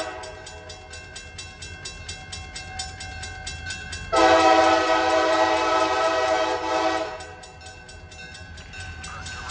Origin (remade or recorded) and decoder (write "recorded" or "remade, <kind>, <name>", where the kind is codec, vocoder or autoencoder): recorded